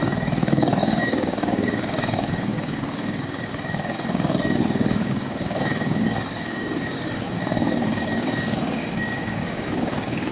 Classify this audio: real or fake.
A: fake